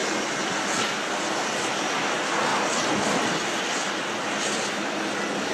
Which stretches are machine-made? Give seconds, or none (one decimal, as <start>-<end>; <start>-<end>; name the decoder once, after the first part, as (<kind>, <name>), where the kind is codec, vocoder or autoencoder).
none